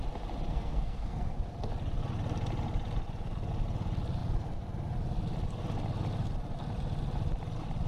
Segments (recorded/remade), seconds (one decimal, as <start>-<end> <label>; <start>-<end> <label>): 0.0-0.5 recorded; 0.5-1.4 remade; 1.4-7.9 recorded